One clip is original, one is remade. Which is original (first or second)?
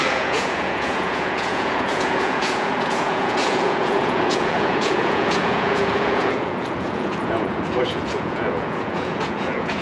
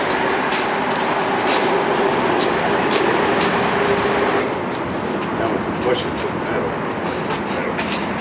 second